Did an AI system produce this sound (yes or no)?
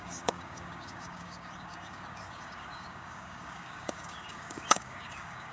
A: yes